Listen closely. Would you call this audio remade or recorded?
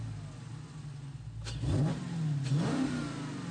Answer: recorded